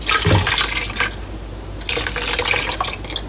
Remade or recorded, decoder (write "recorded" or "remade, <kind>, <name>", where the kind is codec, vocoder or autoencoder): recorded